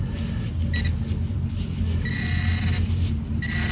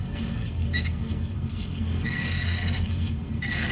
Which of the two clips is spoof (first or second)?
second